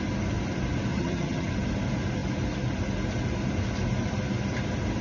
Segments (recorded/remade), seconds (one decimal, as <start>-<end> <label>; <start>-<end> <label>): 0.0-0.9 recorded; 0.9-1.5 remade; 1.5-5.0 recorded